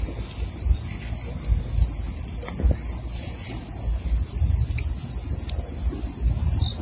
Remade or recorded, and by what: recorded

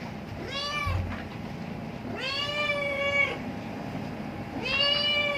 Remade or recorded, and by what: recorded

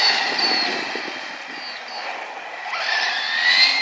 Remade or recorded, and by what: recorded